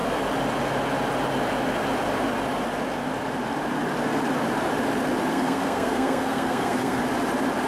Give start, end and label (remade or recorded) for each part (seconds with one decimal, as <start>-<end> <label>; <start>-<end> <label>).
0.0-5.3 recorded; 5.3-7.0 remade; 7.0-7.7 recorded